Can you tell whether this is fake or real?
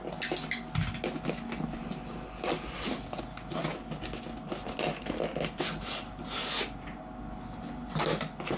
real